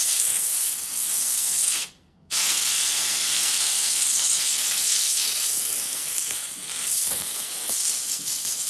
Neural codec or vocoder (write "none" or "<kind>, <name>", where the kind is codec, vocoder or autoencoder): codec, SNAC